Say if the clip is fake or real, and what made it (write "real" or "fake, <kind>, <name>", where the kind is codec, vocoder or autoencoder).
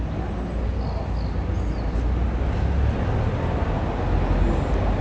real